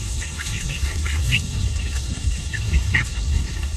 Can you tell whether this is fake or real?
fake